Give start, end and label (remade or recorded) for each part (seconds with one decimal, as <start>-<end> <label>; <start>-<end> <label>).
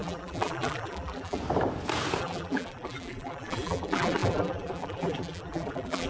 0.0-1.4 remade; 1.4-2.2 recorded; 2.2-6.1 remade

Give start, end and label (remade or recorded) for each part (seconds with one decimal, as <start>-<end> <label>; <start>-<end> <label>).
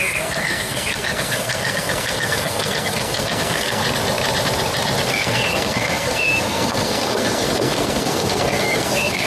0.0-3.8 remade; 3.8-5.1 recorded; 5.1-9.3 remade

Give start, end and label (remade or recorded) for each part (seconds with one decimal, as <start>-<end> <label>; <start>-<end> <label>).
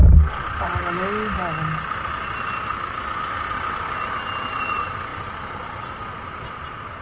0.0-7.0 recorded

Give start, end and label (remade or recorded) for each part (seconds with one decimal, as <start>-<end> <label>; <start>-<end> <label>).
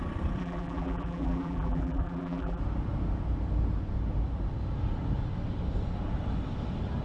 0.0-0.4 recorded; 0.4-2.6 remade; 2.6-7.0 recorded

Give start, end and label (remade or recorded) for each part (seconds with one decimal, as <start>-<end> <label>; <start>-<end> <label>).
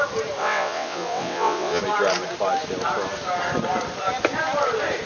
0.0-0.4 recorded; 0.4-1.8 remade; 1.8-5.1 recorded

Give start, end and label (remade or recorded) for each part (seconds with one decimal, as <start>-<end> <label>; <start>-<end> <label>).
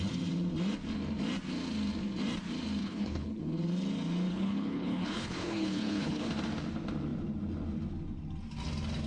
0.0-2.8 recorded; 2.8-3.4 remade; 3.4-4.3 recorded; 4.3-6.3 remade; 6.3-9.1 recorded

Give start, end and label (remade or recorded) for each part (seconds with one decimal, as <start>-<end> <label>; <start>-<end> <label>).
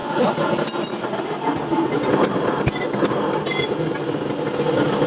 0.0-5.1 recorded